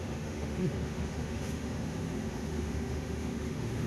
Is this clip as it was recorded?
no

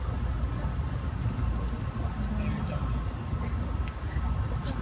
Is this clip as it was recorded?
yes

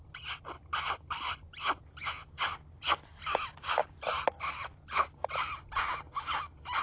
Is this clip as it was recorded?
yes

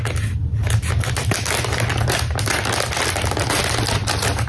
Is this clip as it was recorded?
yes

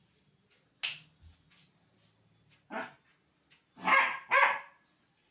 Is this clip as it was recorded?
yes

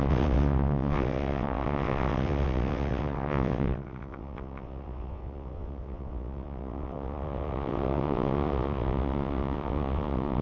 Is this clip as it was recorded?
no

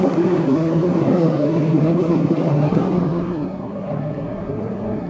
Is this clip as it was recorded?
no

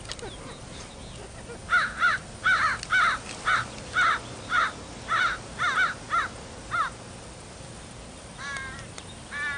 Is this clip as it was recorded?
yes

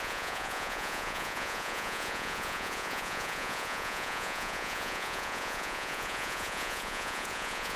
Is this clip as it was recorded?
no